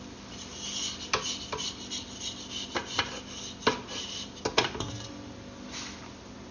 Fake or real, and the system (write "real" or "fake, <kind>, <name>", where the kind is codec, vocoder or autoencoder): real